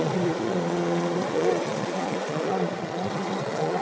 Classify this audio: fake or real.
fake